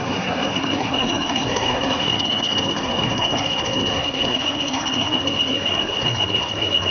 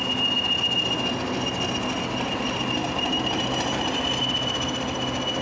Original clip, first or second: second